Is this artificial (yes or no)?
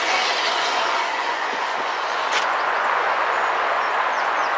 yes